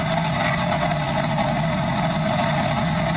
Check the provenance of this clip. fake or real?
real